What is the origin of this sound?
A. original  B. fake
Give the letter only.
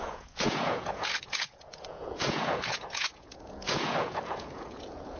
B